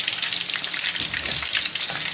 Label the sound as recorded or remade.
recorded